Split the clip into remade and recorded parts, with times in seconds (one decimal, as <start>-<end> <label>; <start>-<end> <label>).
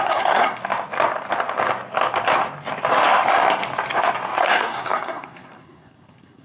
0.0-0.6 remade; 0.6-4.4 recorded; 4.4-6.4 remade